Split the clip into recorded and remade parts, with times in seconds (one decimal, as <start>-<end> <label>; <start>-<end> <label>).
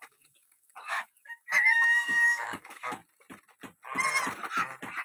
0.0-3.0 remade; 3.0-5.0 recorded